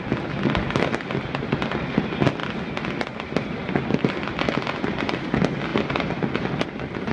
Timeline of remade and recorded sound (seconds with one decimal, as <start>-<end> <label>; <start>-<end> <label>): 0.0-7.1 recorded